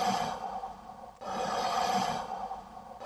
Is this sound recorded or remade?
recorded